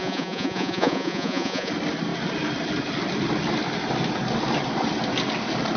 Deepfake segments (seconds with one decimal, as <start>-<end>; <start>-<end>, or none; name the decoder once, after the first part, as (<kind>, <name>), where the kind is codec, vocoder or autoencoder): 0.0-1.7 (vocoder, Vocos)